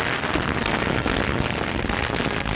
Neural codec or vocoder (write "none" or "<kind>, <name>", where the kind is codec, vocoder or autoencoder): none